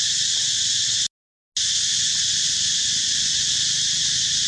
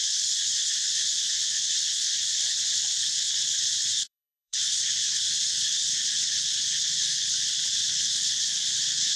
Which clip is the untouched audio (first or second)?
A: first